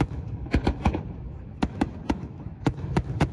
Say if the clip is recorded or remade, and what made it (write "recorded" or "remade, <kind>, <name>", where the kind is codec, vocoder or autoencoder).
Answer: remade, autoencoder, DAC-VAE